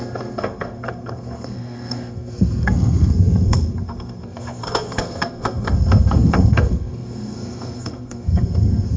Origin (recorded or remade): remade